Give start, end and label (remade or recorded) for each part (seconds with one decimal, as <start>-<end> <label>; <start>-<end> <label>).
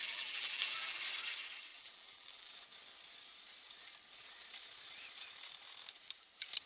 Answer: 0.0-1.0 remade; 1.0-1.7 recorded; 1.7-2.6 remade; 2.6-6.7 recorded